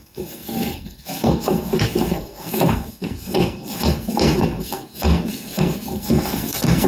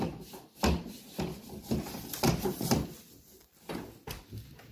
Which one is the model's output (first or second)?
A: first